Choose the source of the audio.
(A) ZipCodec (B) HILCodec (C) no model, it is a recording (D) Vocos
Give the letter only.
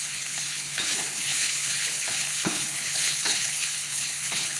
B